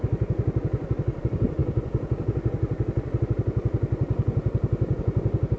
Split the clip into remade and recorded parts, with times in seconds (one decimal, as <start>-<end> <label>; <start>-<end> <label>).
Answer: 0.0-5.6 recorded